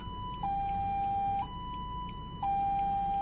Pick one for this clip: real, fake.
real